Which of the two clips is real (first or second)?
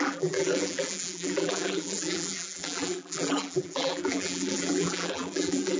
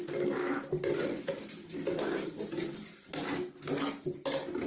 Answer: second